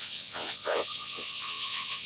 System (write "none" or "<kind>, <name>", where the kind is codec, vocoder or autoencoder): vocoder, WaveNeXt